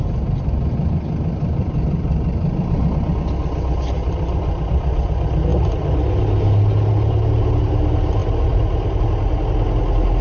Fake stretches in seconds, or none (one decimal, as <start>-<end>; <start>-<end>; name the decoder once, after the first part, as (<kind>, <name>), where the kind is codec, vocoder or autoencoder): 1.6-2.8 (vocoder, BigVGAN v2)